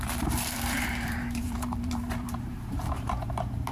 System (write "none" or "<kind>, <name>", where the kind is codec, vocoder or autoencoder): vocoder, BigVGAN v2